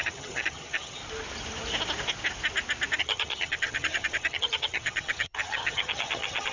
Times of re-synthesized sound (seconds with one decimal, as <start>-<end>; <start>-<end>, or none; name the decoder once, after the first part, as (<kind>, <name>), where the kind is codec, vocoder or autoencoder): 0.0-1.0 (vocoder, HiFi-GAN); 3.0-6.5